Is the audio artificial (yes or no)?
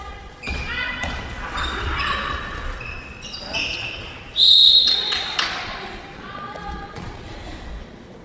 yes